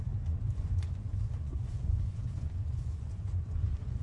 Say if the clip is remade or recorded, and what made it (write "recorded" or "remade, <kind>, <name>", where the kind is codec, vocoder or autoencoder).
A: remade, vocoder, Vocos